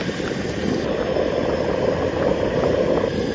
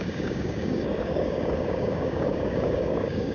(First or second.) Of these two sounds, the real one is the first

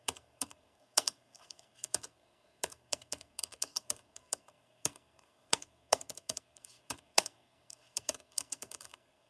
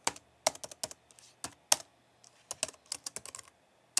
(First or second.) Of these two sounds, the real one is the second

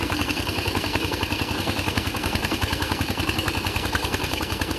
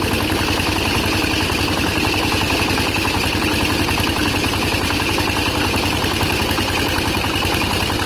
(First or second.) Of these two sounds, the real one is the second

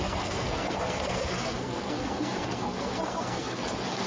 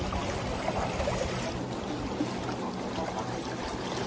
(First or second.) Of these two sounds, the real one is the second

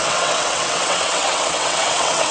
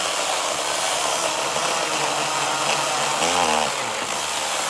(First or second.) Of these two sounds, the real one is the second